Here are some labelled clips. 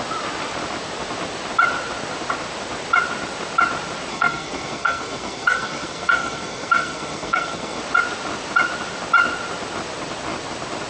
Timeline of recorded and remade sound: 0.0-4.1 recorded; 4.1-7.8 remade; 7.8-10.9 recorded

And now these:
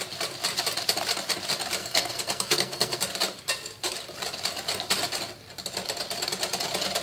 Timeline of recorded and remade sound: 0.0-1.8 recorded; 1.8-3.0 remade; 3.0-7.0 recorded

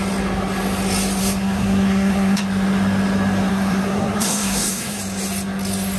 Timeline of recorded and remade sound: 0.0-1.2 recorded; 1.2-2.4 remade; 2.4-3.5 recorded; 3.5-5.0 remade; 5.0-6.0 recorded